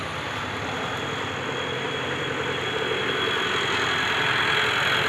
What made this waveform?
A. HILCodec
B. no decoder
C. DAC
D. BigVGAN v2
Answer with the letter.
B